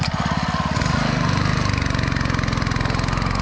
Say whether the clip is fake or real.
real